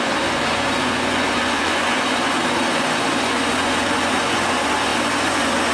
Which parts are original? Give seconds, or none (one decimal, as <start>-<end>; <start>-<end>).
none